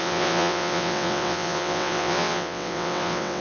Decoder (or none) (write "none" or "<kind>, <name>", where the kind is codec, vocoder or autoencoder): vocoder, WaveNeXt